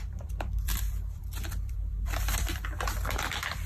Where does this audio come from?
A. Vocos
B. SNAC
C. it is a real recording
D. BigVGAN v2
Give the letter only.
D